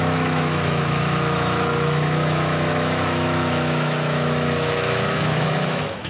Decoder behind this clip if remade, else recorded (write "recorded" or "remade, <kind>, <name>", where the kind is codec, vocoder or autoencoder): remade, autoencoder, DAC-VAE